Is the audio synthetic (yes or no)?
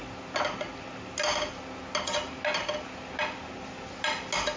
no